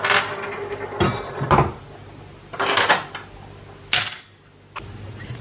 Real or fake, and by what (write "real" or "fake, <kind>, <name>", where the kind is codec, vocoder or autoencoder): real